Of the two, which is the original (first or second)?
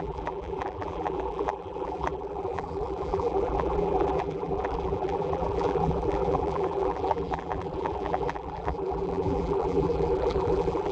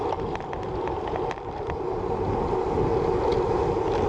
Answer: second